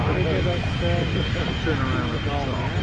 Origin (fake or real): real